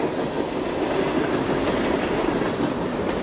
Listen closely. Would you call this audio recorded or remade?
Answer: recorded